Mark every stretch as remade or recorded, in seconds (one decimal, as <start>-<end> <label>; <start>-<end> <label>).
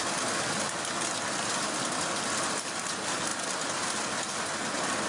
0.0-5.1 recorded